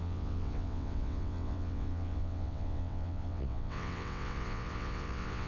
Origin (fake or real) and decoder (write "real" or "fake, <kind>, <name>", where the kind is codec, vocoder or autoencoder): fake, vocoder, WaveNeXt